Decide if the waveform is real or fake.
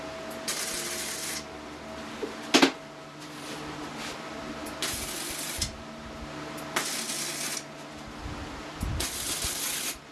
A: real